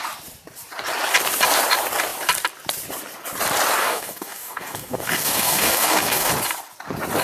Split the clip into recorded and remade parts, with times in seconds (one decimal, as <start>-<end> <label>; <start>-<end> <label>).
0.0-3.8 recorded; 3.8-6.3 remade; 6.3-7.2 recorded